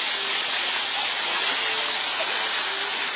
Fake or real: real